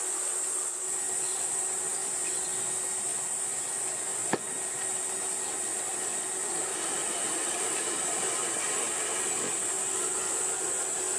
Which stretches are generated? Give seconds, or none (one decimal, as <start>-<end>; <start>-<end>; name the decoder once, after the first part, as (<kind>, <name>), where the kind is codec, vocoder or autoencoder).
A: 1.9-2.4 (vocoder, BigVGAN v2)